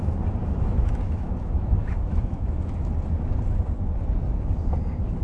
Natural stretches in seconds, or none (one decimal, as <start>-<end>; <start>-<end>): 0.0-0.4; 2.9-5.2